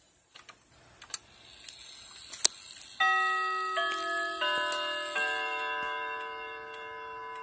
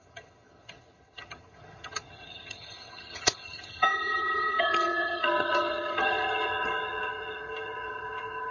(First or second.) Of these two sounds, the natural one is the first